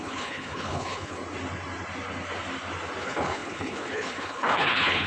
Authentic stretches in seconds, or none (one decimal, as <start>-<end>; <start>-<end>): 1.2-3.0